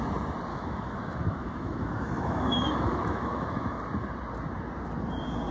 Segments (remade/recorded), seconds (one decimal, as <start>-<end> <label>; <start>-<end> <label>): 0.0-0.5 recorded; 0.5-3.8 remade; 3.8-5.5 recorded